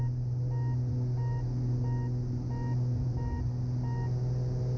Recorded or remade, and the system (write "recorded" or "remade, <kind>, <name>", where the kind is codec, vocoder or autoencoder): recorded